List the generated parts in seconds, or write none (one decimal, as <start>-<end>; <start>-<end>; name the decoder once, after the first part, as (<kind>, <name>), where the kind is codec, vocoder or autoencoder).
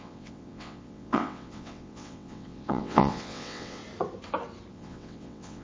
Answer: 0.0-3.8 (vocoder, WaveNeXt); 4.7-5.6